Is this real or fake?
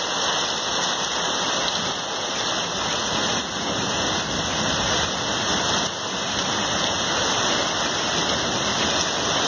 real